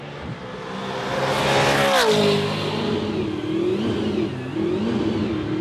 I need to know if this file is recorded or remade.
recorded